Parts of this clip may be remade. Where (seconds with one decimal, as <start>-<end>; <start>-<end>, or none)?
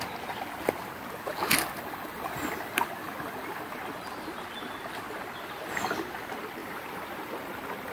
6.6-7.3